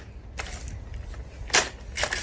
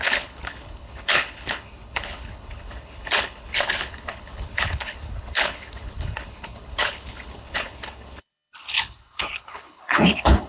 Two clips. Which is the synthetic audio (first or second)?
second